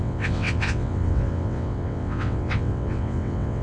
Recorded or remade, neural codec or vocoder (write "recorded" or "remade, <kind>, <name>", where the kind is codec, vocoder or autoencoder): remade, vocoder, WaveNeXt